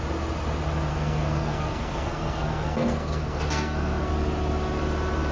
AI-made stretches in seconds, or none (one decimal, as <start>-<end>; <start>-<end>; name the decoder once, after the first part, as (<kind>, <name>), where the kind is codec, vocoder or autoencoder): 0.9-4.1 (codec, SNAC)